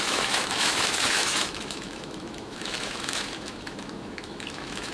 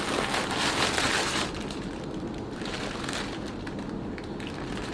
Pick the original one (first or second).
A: second